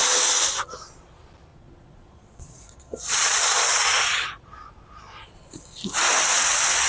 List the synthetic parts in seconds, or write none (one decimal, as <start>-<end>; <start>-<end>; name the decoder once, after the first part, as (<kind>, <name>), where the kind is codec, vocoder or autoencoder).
1.5-5.6 (vocoder, Vocos)